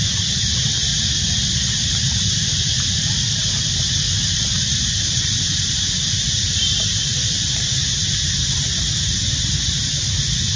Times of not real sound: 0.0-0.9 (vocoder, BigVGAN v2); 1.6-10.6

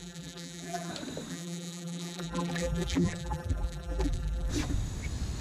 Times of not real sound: 0.0-0.9 (vocoder, BigVGAN v2); 1.3-4.5

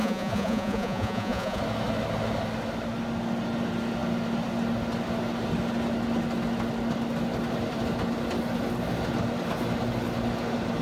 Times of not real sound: 0.0-1.6 (vocoder, Vocos)

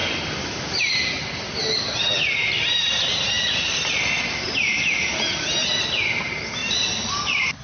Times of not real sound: 0.0-0.8 (vocoder, BigVGAN v2); 2.4-5.1; 6.6-7.1